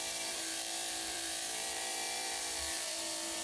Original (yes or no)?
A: no